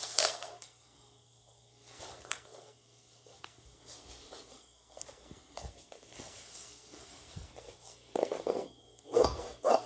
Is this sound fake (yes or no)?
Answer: yes